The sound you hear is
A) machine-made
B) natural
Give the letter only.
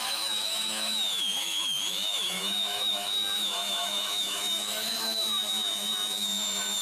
A